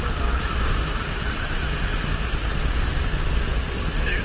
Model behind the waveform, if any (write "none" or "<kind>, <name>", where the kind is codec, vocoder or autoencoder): none